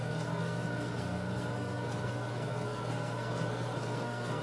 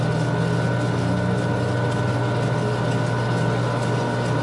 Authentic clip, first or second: second